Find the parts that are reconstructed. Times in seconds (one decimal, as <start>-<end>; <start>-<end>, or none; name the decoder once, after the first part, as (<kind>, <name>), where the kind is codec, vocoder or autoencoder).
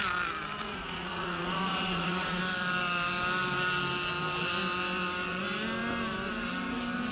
0.6-2.4 (vocoder, Vocos)